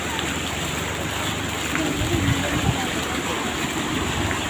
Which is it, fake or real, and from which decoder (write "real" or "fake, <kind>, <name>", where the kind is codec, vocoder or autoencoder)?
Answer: real